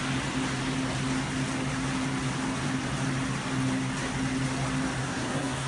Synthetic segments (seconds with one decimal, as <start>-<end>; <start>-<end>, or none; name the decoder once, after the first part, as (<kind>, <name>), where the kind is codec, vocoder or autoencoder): 5.0-5.7 (codec, SNAC)

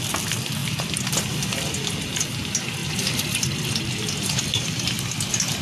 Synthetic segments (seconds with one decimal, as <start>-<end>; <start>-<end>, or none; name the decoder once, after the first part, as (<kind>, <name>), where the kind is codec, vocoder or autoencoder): none

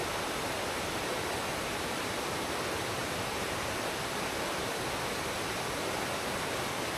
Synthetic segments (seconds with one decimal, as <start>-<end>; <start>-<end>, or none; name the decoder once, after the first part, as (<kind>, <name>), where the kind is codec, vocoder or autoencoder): 3.0-3.6 (vocoder, BigVGAN v2)

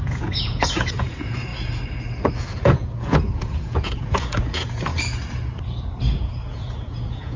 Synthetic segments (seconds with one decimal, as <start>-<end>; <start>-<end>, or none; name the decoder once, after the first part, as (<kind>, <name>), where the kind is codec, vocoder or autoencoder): 0.0-1.5 (vocoder, Vocos); 2.4-4.9; 6.5-7.4

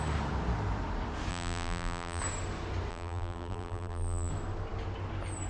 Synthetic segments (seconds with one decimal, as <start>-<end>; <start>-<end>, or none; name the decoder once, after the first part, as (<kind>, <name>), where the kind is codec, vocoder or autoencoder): 1.3-2.2 (vocoder, BigVGAN v2); 2.9-4.3

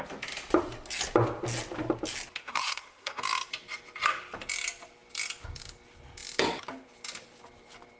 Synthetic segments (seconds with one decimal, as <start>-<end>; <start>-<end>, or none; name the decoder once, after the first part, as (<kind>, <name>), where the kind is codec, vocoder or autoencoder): 2.4-3.2 (codec, SNAC)

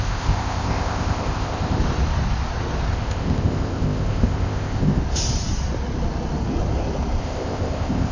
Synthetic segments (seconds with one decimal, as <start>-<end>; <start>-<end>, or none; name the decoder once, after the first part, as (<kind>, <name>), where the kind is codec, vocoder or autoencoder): 0.0-1.8 (codec, ZipCodec); 2.9-5.0; 7.2-8.1

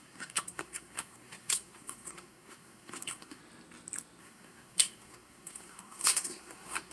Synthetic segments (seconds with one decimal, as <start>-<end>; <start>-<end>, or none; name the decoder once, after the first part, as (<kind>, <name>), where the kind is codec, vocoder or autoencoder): 0.0-3.4 (codec, SNAC); 4.2-6.9